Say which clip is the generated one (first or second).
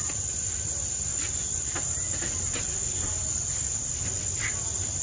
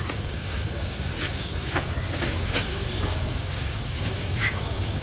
second